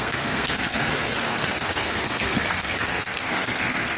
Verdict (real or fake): fake